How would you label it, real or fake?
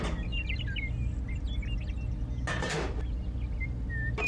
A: real